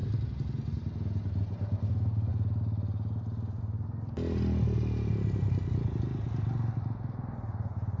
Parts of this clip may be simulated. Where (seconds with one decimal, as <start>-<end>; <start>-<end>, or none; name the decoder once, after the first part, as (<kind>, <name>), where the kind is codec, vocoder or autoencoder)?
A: none